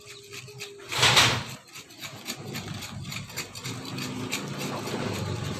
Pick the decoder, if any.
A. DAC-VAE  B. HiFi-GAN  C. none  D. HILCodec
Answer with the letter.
C